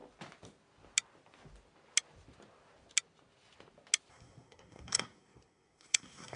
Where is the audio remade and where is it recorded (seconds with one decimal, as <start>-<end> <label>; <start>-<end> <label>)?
0.0-4.1 recorded; 4.1-6.4 remade